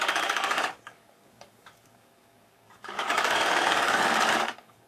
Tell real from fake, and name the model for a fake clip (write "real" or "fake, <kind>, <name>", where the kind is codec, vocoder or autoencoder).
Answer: fake, codec, DAC